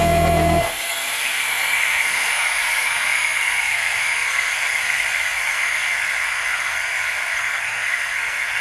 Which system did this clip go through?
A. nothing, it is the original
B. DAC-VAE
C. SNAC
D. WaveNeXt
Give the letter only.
C